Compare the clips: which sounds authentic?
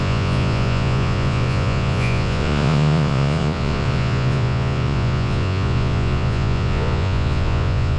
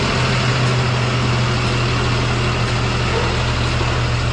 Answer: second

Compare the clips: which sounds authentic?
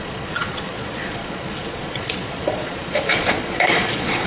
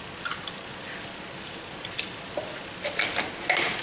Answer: second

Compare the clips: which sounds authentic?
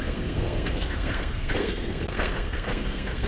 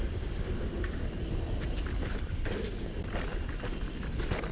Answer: second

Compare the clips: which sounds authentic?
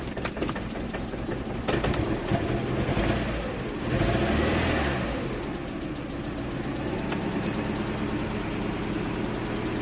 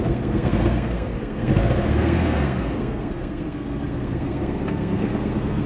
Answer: first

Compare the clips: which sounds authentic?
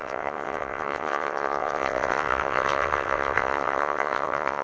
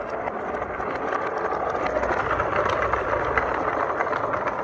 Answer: second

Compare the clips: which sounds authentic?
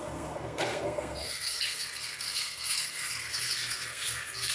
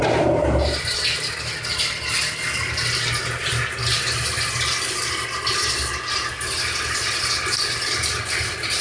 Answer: second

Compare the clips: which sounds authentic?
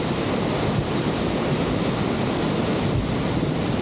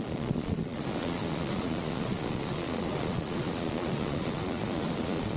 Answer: first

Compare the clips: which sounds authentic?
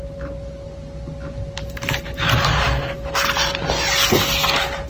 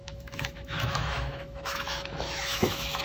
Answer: first